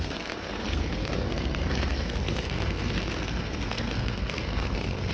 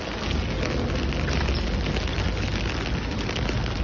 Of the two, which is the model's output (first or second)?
first